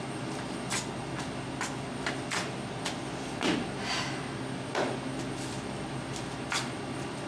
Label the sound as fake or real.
real